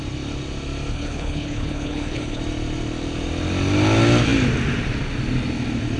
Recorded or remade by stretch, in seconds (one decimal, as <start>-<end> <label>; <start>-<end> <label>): 0.0-0.9 recorded; 0.9-2.4 remade; 2.4-6.0 recorded